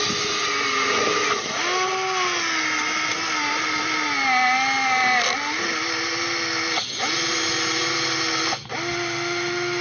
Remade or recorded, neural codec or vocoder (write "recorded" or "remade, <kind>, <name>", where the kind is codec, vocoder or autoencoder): recorded